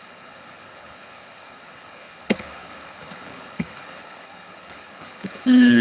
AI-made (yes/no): yes